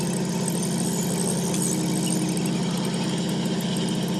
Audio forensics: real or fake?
real